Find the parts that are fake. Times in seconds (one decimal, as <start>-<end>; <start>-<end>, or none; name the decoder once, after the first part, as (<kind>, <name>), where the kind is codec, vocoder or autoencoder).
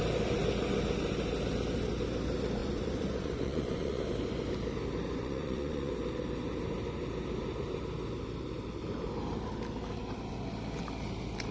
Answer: 2.6-4.0 (vocoder, Vocos); 5.2-5.9